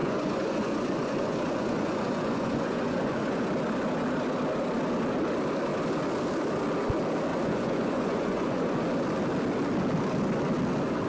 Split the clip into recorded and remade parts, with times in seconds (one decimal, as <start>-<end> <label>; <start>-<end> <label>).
0.0-3.4 remade; 3.4-7.3 recorded; 7.3-8.8 remade; 8.8-11.1 recorded